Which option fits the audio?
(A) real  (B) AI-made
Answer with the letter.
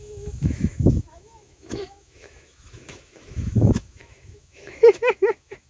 B